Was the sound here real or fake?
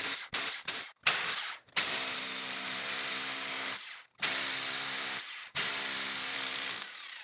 fake